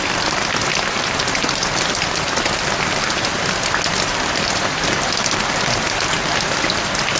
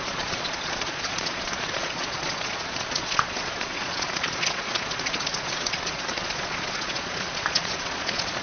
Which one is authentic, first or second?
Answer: first